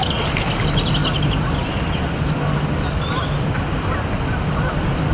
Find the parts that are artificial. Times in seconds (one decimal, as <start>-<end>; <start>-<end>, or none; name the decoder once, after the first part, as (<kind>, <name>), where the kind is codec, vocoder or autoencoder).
none